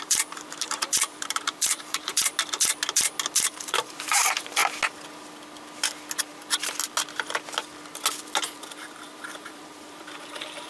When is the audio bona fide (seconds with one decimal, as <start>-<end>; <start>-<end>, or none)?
2.1-3.5; 4.6-8.5